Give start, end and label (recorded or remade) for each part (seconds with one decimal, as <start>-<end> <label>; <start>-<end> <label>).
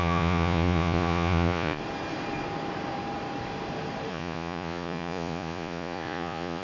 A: 0.0-1.8 remade; 1.8-4.1 recorded; 4.1-6.6 remade